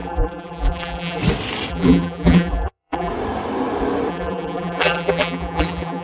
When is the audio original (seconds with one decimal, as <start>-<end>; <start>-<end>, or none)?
1.2-1.7; 3.1-4.1